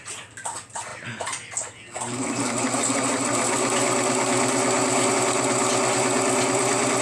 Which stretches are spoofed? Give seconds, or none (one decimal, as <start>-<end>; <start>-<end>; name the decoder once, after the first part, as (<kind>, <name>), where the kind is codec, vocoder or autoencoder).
none